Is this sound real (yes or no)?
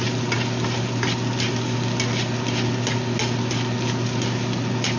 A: yes